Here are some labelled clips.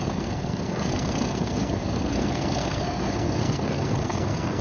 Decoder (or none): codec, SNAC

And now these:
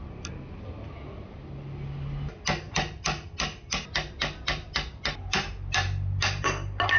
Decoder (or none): none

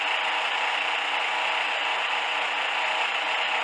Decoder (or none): none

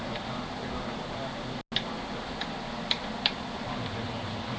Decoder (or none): none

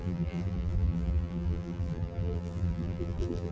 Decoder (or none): vocoder, BigVGAN v2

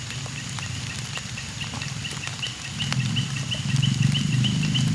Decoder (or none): none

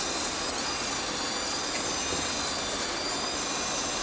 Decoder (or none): none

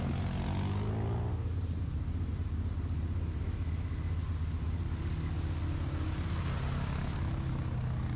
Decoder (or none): none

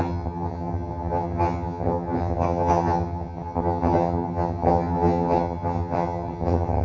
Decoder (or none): vocoder, HiFi-GAN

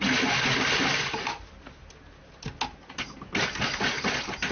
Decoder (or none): none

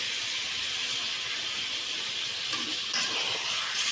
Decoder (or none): none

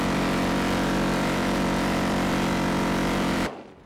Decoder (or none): vocoder, BigVGAN v2